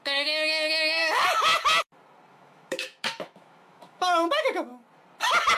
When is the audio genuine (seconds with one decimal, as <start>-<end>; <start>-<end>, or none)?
1.0-2.3; 4.7-5.6